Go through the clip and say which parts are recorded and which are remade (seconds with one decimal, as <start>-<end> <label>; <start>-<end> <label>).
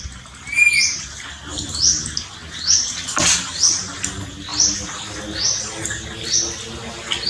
0.0-7.3 recorded